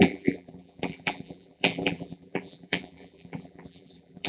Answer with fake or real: fake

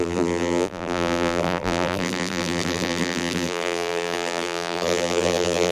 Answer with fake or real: fake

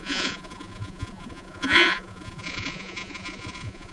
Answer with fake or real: fake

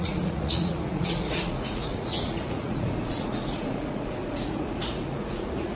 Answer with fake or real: fake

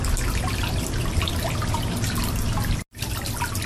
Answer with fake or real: real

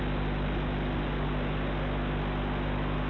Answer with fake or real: real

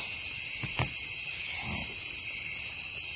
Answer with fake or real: real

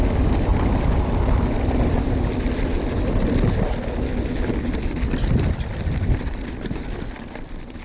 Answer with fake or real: real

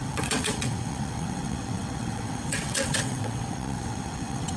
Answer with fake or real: fake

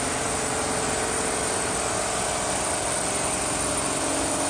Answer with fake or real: real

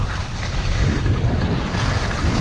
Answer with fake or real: real